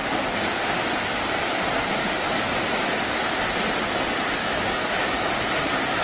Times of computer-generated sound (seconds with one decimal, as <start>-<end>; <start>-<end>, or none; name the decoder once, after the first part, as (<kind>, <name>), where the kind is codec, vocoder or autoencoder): 4.4-5.3 (autoencoder, DAC-VAE)